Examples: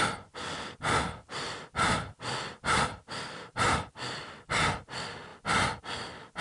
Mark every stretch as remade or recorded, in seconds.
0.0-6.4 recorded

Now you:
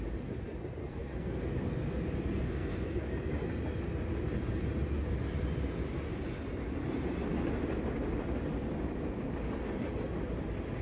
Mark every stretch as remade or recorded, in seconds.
0.0-0.8 recorded; 0.8-1.4 remade; 1.4-2.4 recorded; 2.4-3.0 remade; 3.0-10.8 recorded

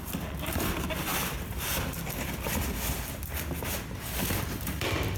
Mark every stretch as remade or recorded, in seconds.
0.0-5.2 recorded

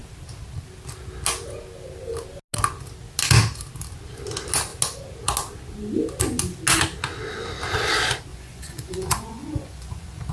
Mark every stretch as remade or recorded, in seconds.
0.0-8.3 recorded; 8.3-10.3 remade

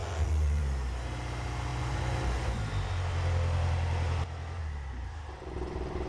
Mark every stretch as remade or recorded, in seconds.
0.0-0.6 remade; 0.6-1.7 recorded; 1.7-2.6 remade; 2.6-6.1 recorded

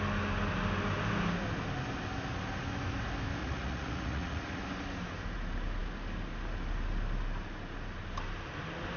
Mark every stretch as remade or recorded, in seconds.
0.0-3.4 recorded; 3.4-4.6 remade; 4.6-9.0 recorded